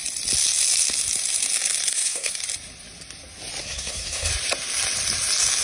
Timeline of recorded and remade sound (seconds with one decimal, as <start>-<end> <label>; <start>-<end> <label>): 0.0-1.9 recorded; 1.9-2.4 remade; 2.4-3.6 recorded; 3.6-4.3 remade; 4.3-5.6 recorded

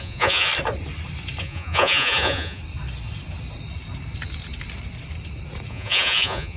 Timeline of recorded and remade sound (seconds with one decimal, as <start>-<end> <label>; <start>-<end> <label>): 0.0-0.5 remade; 0.5-1.4 recorded; 1.4-2.6 remade; 2.6-5.7 recorded; 5.7-6.6 remade

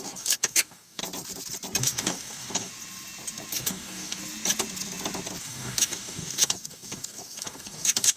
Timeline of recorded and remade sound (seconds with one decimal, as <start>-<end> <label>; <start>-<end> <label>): 0.0-1.0 remade; 1.0-1.8 recorded; 1.8-2.7 remade; 2.7-3.5 recorded; 3.5-4.2 remade; 4.2-5.4 recorded; 5.4-8.2 remade